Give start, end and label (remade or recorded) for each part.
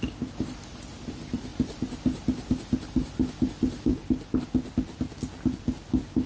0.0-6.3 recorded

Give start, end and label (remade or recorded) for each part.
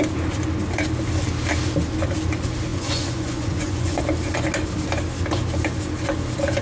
0.0-2.7 recorded; 2.7-4.0 remade; 4.0-6.6 recorded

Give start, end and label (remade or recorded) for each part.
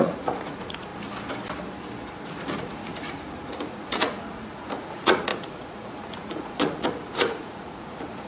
0.0-0.9 remade; 0.9-2.1 recorded; 2.1-8.3 remade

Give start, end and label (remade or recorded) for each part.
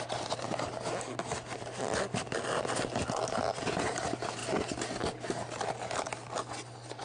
0.0-7.0 recorded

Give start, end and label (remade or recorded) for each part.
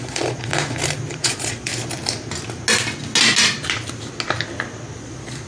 0.0-0.5 remade; 0.5-1.1 recorded; 1.1-1.7 remade; 1.7-5.0 recorded; 5.0-5.5 remade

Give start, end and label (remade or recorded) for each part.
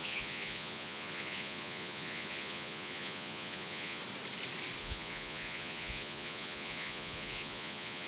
0.0-4.0 remade; 4.0-4.8 recorded; 4.8-8.1 remade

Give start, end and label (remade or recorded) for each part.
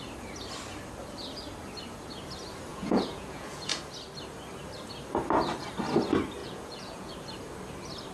0.0-2.7 recorded; 2.7-3.8 remade; 3.8-6.4 recorded; 6.4-7.1 remade; 7.1-8.1 recorded